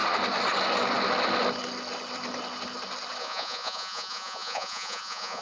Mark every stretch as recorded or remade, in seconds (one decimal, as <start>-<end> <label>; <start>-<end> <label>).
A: 0.0-3.2 recorded; 3.2-5.4 remade